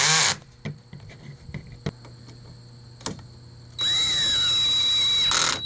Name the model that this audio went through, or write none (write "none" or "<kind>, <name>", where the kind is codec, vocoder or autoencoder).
none